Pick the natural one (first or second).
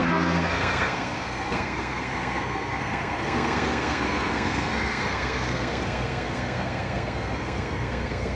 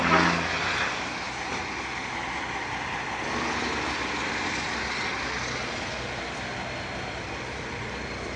second